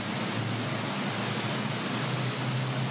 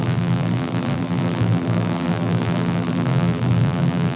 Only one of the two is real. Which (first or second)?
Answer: first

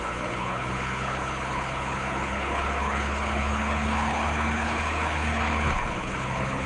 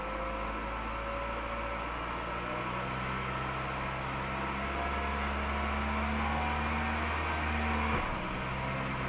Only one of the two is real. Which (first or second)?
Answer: second